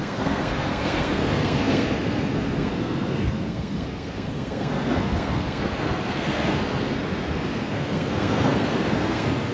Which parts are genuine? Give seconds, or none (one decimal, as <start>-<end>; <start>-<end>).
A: none